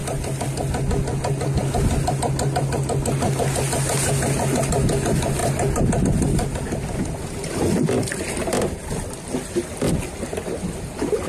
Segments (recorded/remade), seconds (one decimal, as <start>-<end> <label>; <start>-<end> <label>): 0.0-11.3 recorded